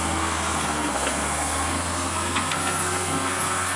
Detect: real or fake fake